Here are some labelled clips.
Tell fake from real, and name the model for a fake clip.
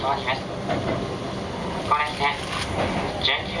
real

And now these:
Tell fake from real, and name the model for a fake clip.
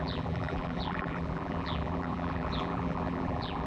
fake, vocoder, BigVGAN v2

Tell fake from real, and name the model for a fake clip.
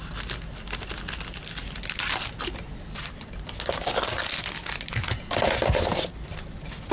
real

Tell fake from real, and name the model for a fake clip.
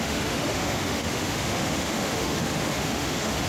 fake, autoencoder, DAC-VAE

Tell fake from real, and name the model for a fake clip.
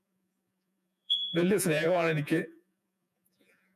fake, vocoder, Vocos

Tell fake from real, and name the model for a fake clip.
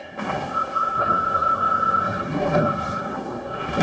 fake, codec, SNAC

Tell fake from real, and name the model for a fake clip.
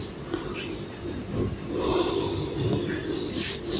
real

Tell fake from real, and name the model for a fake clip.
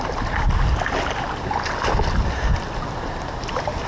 real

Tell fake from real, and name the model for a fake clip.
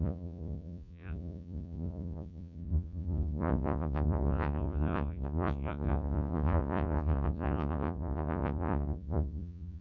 fake, vocoder, Vocos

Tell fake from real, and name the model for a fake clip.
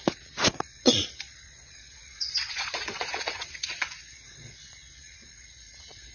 fake, vocoder, Vocos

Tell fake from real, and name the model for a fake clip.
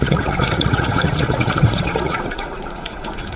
fake, vocoder, Vocos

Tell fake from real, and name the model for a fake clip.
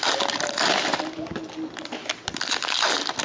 real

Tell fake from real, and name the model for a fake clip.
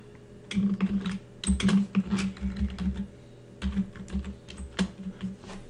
real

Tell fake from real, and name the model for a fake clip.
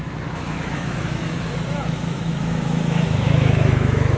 fake, autoencoder, DAC-VAE